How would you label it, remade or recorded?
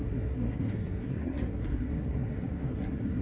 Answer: remade